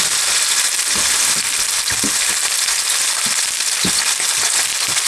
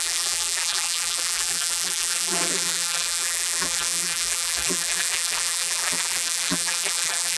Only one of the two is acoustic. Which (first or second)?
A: first